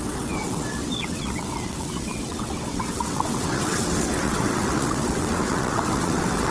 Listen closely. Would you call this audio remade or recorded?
remade